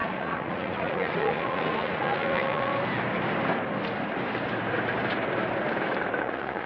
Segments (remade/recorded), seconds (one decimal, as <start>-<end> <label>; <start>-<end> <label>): 0.0-2.7 remade; 2.7-6.2 recorded; 6.2-6.7 remade